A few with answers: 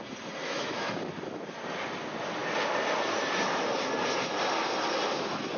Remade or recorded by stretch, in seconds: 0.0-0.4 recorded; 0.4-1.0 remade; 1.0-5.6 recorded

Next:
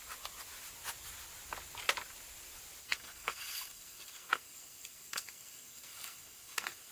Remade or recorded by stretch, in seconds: 0.0-2.8 recorded; 2.8-6.9 remade

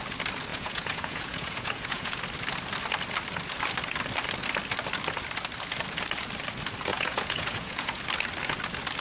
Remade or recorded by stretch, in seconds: 0.0-0.5 recorded; 0.5-2.2 remade; 2.2-6.9 recorded; 6.9-8.0 remade; 8.0-9.0 recorded

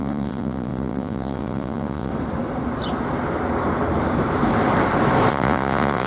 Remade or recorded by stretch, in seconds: 0.0-2.1 remade; 2.1-5.3 recorded; 5.3-6.1 remade

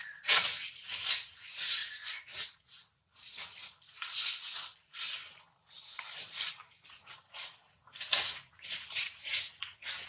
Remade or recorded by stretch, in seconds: 0.0-4.7 remade; 4.7-6.7 recorded; 6.7-10.1 remade

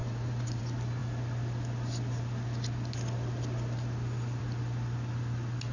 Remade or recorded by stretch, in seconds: 0.0-0.6 remade; 0.6-5.7 recorded

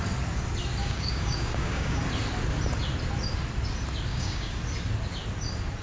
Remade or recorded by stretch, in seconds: 0.0-0.8 recorded; 0.8-2.0 remade; 2.0-4.1 recorded; 4.1-4.6 remade; 4.6-5.8 recorded